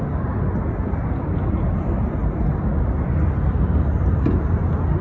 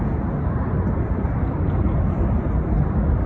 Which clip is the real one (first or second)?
first